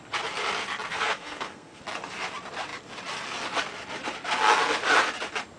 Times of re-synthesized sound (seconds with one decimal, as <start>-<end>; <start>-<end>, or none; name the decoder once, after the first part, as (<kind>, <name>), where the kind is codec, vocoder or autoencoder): 0.9-1.8 (codec, SNAC)